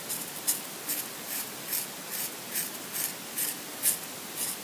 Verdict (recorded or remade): recorded